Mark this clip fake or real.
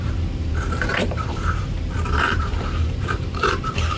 fake